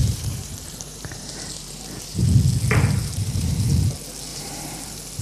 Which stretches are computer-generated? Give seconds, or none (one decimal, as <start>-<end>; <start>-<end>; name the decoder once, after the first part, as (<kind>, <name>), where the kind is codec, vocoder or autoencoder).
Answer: 0.0-2.3 (vocoder, BigVGAN v2); 3.0-3.7; 4.3-4.8